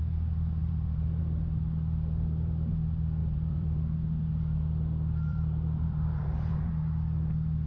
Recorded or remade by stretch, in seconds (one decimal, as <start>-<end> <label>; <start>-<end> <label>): 0.0-0.6 recorded; 0.6-1.2 remade; 1.2-3.2 recorded; 3.2-3.8 remade; 3.8-5.3 recorded; 5.3-6.7 remade; 6.7-7.7 recorded

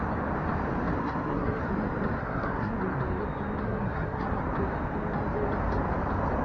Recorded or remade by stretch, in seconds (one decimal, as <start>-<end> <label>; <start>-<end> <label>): 0.0-1.0 recorded; 1.0-1.6 remade; 1.6-2.2 recorded; 2.2-2.7 remade; 2.7-3.6 recorded; 3.6-4.4 remade; 4.4-6.4 recorded

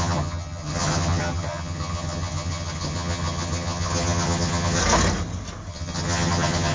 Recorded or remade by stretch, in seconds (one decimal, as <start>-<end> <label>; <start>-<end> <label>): 0.0-4.8 remade; 4.8-5.7 recorded; 5.7-6.7 remade